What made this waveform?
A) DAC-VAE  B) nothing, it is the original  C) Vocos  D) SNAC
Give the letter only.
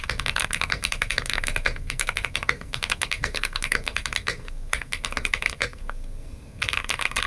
D